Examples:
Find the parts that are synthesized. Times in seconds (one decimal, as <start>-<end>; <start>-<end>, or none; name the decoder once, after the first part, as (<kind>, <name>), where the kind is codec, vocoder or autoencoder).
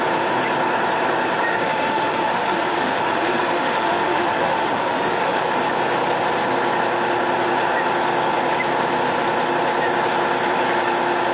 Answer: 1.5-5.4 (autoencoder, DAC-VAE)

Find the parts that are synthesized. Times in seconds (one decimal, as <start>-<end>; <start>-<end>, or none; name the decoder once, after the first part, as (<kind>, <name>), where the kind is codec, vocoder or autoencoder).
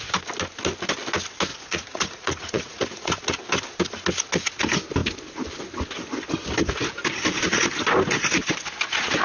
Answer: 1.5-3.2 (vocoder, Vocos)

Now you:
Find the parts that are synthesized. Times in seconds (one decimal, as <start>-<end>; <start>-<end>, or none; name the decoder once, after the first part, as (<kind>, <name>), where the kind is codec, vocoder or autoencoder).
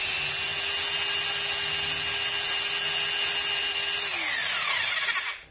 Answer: none